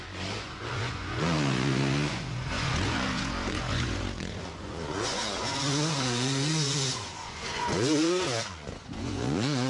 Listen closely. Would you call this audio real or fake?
fake